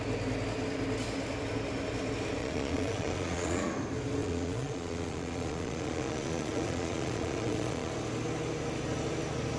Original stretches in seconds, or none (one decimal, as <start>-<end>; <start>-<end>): 0.0-2.4; 3.7-4.2; 7.9-9.6